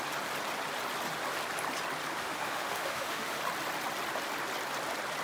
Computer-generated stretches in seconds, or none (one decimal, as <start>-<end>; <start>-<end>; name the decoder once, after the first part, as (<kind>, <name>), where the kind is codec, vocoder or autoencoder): 2.2-3.4 (autoencoder, DAC-VAE)